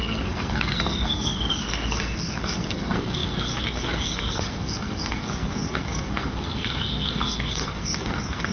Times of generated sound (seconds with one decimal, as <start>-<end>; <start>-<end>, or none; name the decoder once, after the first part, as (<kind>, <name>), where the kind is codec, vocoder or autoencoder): 0.0-8.5 (codec, SNAC)